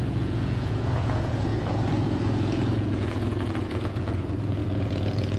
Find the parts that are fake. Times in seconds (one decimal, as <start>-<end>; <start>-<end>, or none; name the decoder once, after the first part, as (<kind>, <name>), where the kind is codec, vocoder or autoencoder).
0.0-5.4 (vocoder, Vocos)